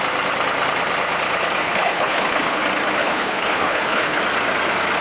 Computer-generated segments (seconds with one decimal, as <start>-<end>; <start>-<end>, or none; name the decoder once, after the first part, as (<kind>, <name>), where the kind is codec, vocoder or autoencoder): 1.6-2.6 (codec, HILCodec); 3.0-4.2